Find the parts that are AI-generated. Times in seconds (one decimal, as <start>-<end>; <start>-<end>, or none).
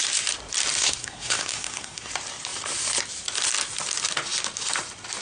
0.8-2.1